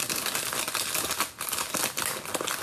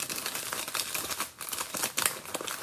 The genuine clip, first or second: first